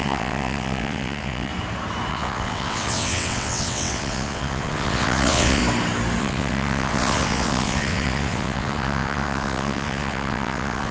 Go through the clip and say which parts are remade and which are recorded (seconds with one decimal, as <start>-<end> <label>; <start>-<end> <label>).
0.0-1.5 remade; 1.5-2.1 recorded; 2.1-5.6 remade; 5.6-6.2 recorded; 6.2-10.9 remade